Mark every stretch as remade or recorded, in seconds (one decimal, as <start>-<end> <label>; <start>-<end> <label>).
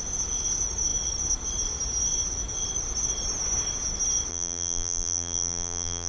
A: 0.0-4.3 recorded; 4.3-6.1 remade